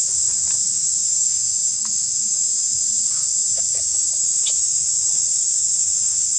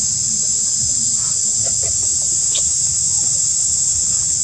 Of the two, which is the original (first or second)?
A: second